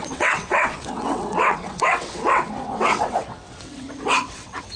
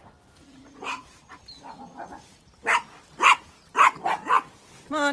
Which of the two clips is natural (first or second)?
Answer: second